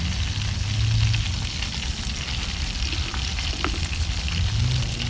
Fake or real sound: real